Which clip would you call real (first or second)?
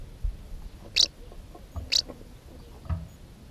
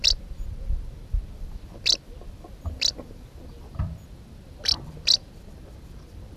first